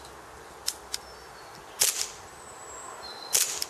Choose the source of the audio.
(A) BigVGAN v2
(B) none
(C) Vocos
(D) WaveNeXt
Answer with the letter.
B